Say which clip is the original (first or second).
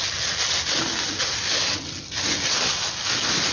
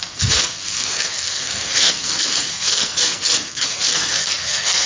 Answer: first